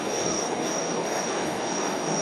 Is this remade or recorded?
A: remade